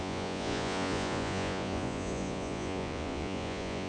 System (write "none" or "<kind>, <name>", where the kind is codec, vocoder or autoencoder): vocoder, Vocos